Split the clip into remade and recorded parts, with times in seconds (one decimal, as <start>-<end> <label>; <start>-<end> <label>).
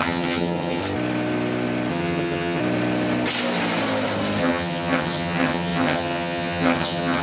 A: 0.0-0.8 remade; 0.8-1.9 recorded; 1.9-2.6 remade; 2.6-4.4 recorded; 4.4-7.2 remade